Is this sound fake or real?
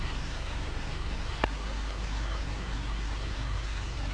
fake